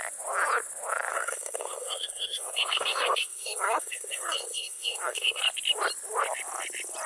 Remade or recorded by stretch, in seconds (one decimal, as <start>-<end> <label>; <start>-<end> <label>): 0.0-1.1 recorded; 1.1-5.4 remade; 5.4-7.1 recorded